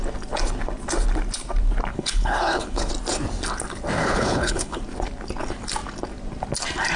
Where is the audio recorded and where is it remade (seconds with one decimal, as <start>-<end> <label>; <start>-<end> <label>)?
0.0-1.9 recorded; 1.9-2.9 remade; 2.9-4.0 recorded; 4.0-4.8 remade; 4.8-7.0 recorded